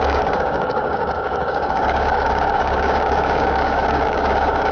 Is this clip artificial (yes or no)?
yes